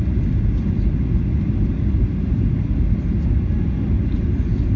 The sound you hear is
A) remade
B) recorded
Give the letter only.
B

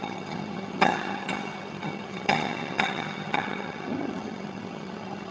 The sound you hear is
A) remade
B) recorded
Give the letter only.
A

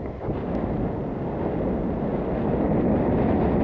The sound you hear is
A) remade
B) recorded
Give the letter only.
B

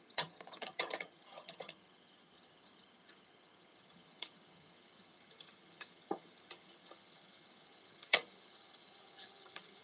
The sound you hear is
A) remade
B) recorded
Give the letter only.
A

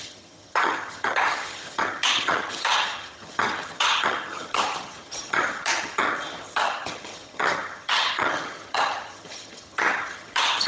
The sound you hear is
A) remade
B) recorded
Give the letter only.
A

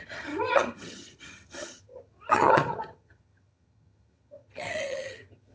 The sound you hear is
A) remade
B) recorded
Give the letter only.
A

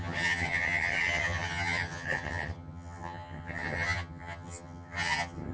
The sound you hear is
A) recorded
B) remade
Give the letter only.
B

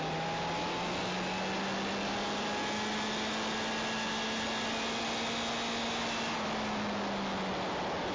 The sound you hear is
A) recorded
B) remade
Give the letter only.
A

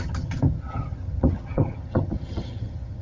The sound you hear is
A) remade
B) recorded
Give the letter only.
A